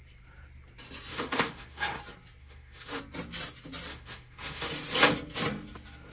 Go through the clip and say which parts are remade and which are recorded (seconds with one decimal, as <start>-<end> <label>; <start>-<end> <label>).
0.0-1.1 recorded; 1.1-2.0 remade; 2.0-2.4 recorded; 2.4-3.0 remade; 3.0-3.9 recorded; 3.9-4.7 remade; 4.7-6.1 recorded